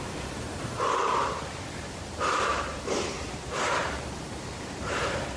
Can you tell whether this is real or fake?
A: fake